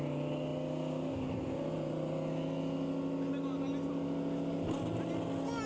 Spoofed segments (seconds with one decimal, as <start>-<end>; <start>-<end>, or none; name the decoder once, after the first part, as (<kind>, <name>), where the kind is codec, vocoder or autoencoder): none

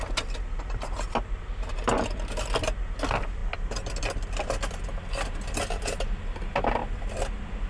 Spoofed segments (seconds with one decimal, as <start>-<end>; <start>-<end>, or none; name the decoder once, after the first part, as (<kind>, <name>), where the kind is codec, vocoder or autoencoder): none

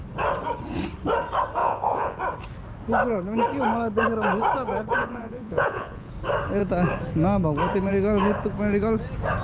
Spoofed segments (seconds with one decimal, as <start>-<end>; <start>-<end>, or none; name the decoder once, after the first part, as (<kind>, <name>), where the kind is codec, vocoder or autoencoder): 1.6-2.2 (vocoder, Vocos); 5.0-6.1

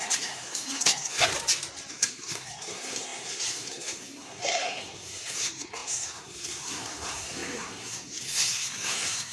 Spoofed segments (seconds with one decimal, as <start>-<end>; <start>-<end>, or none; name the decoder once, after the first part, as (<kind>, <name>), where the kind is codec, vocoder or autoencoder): 0.0-1.3 (codec, SNAC); 1.9-9.3